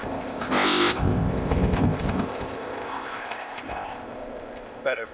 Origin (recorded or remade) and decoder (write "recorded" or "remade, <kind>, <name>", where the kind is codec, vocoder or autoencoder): remade, codec, ZipCodec